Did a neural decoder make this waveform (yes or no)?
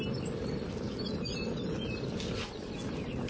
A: no